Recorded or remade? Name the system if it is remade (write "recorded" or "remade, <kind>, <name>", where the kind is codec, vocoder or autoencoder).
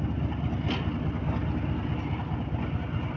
recorded